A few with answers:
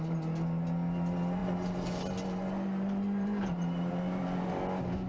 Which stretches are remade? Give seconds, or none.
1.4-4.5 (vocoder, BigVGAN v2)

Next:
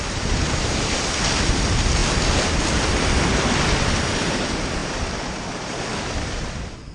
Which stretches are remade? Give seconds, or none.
0.0-2.0 (vocoder, BigVGAN v2); 4.0-6.9

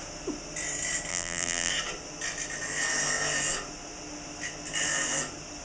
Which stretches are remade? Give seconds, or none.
1.1-1.7 (vocoder, BigVGAN v2)

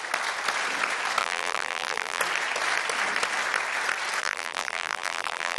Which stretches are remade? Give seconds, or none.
1.2-2.2 (vocoder, BigVGAN v2); 4.2-5.6

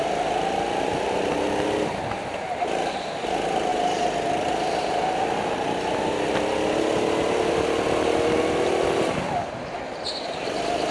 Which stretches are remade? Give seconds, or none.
none

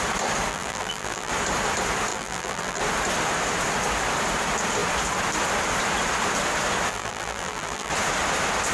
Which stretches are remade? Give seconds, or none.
0.5-1.3 (vocoder, BigVGAN v2); 2.1-2.8; 6.9-7.9

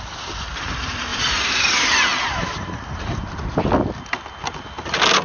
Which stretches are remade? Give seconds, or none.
1.1-3.6 (vocoder, BigVGAN v2)

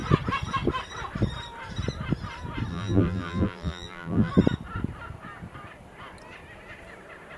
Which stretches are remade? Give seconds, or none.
2.7-4.3 (vocoder, BigVGAN v2)